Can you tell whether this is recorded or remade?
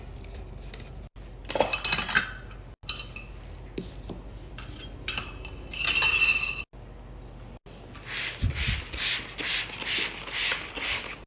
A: recorded